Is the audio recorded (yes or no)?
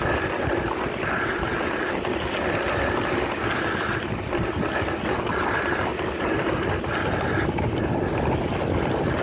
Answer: yes